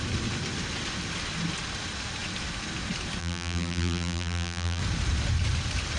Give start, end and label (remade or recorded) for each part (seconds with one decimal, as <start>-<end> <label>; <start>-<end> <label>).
0.0-3.2 recorded; 3.2-4.8 remade; 4.8-6.0 recorded